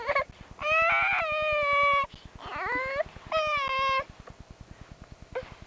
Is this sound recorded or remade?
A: recorded